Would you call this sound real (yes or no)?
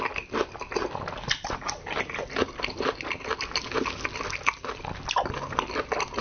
yes